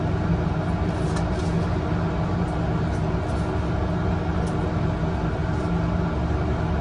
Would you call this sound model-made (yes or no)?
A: no